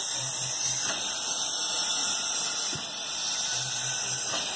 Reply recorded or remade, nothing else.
recorded